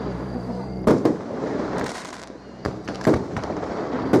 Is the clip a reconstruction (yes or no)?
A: yes